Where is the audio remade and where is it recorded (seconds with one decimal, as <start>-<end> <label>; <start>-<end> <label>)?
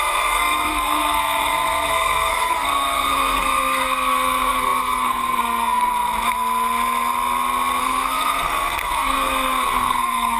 0.0-5.9 remade; 5.9-7.8 recorded; 7.8-10.4 remade